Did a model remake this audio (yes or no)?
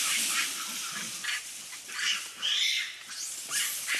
no